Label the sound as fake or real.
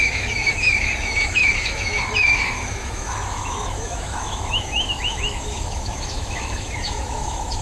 fake